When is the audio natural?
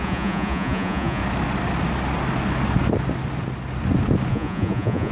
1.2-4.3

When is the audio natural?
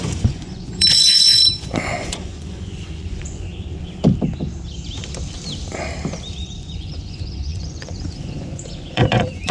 3.5-6.3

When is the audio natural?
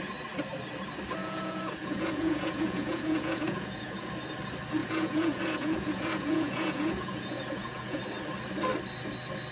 0.0-1.2; 4.1-4.8; 8.0-9.5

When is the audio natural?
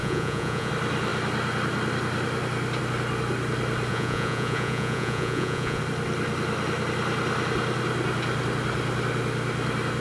0.7-3.9; 5.8-10.0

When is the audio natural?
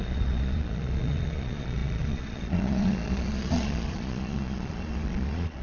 none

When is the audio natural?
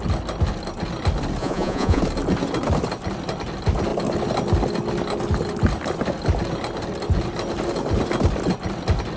0.0-1.4; 2.0-9.2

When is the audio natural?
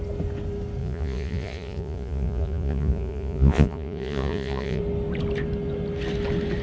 0.0-0.8; 4.8-6.6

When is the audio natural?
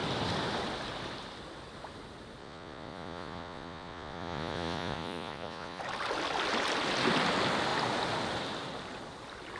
0.0-2.4; 5.8-9.6